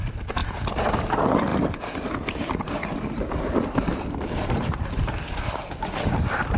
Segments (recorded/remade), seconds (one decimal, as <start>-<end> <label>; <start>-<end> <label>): 0.0-1.5 recorded; 1.5-5.5 remade; 5.5-6.6 recorded